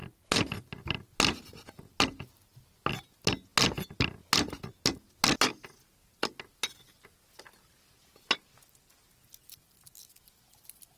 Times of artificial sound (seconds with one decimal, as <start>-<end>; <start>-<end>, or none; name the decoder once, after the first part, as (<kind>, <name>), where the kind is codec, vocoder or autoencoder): none